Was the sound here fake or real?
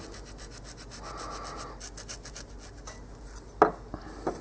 real